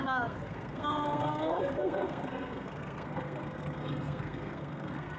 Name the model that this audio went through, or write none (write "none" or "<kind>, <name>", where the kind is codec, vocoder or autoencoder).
codec, SNAC